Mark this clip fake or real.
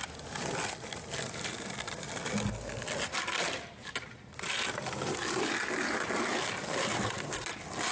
real